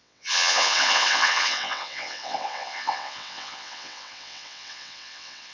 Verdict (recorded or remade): remade